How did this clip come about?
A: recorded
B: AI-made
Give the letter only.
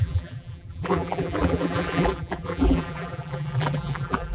B